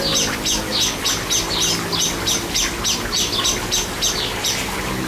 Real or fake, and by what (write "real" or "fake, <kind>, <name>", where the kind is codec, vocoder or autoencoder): real